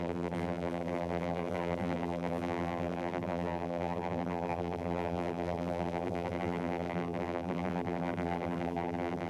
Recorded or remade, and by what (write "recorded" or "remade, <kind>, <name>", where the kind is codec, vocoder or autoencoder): remade, vocoder, BigVGAN v2